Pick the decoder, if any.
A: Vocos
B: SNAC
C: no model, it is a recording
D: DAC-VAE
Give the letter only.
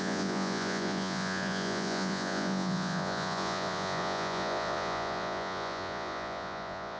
A